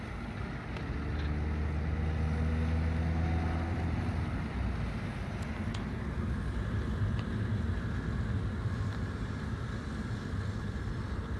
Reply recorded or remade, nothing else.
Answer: recorded